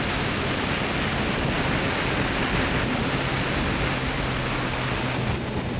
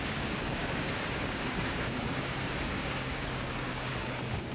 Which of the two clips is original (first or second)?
first